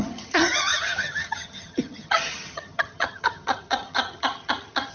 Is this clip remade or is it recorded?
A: remade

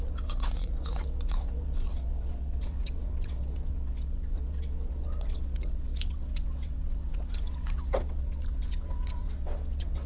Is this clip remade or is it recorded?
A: remade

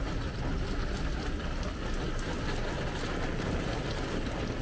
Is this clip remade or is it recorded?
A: recorded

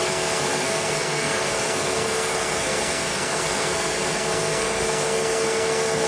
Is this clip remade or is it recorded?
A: remade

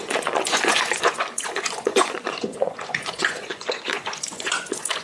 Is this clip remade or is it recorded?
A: remade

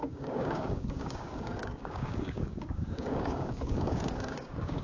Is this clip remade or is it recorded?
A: remade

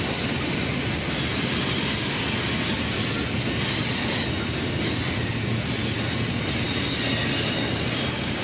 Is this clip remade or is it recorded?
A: recorded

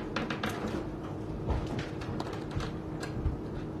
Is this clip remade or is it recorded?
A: recorded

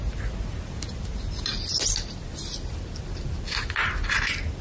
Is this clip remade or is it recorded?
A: recorded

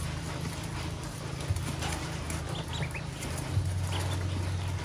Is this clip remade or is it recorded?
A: recorded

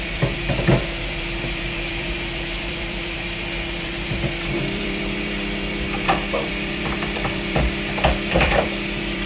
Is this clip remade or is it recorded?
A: remade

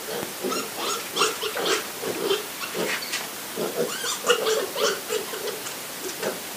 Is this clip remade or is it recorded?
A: recorded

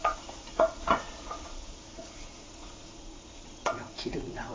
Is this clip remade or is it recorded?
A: remade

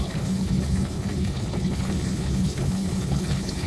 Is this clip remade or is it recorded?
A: remade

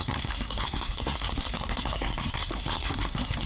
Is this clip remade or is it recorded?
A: remade